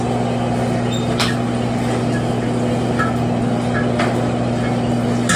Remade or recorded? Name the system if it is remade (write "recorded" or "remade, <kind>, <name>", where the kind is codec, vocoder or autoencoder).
recorded